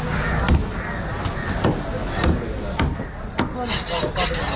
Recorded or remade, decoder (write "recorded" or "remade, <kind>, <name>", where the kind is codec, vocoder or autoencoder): recorded